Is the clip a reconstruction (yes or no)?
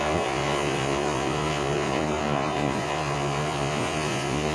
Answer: yes